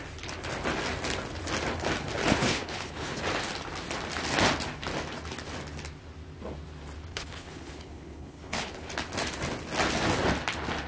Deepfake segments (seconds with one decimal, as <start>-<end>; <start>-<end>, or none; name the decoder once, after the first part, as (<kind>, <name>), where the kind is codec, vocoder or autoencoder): 2.3-3.2 (codec, HILCodec); 7.1-8.9